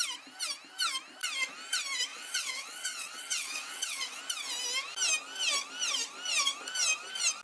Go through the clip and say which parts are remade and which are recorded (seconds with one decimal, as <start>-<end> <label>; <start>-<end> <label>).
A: 0.0-2.1 recorded; 2.1-4.2 remade; 4.2-7.4 recorded

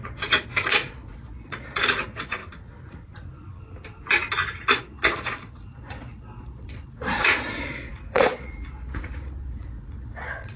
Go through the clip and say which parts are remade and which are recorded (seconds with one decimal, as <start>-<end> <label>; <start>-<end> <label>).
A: 0.0-2.4 remade; 2.4-4.6 recorded; 4.6-10.6 remade

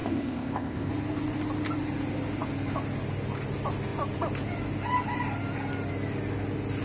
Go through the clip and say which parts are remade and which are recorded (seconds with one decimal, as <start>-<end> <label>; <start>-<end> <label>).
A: 0.0-0.9 remade; 0.9-6.8 recorded

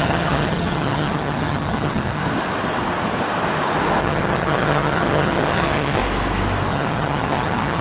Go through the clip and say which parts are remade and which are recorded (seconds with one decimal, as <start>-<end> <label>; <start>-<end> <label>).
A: 0.0-2.2 remade; 2.2-4.0 recorded; 4.0-6.0 remade; 6.0-6.7 recorded; 6.7-7.8 remade